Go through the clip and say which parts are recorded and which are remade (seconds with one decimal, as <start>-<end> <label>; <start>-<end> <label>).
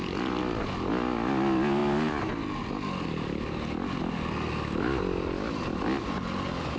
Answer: 0.0-6.8 recorded